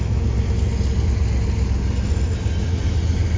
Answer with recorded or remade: recorded